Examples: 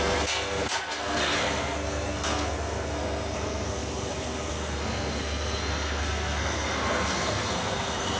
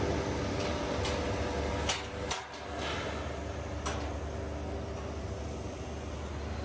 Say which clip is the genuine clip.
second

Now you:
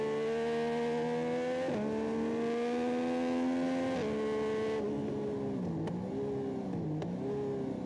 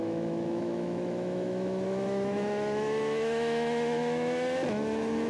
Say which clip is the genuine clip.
first